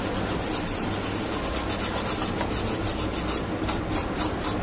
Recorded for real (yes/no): yes